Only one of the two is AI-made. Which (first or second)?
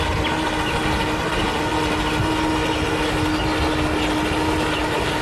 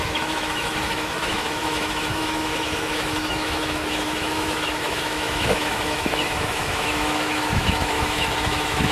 second